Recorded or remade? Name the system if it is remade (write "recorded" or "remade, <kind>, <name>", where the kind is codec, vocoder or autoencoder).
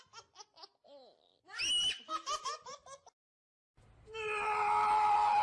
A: recorded